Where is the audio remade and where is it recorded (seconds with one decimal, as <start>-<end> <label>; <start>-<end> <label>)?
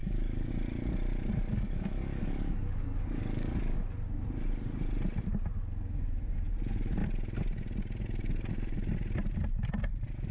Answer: 0.0-0.5 remade; 0.5-1.5 recorded; 1.5-3.8 remade; 3.8-10.3 recorded